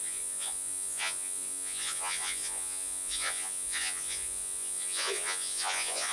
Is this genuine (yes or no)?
no